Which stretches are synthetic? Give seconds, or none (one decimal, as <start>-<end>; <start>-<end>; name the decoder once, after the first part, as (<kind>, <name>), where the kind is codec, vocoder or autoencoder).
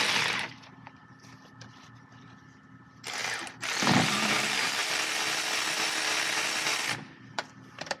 0.0-3.2 (vocoder, BigVGAN v2); 4.0-4.8; 7.2-8.0